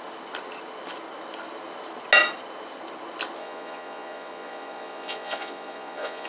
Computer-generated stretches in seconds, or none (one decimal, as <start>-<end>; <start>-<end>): 3.4-6.3